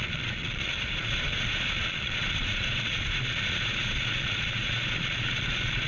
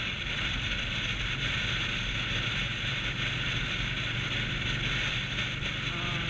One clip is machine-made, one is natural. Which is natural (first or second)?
second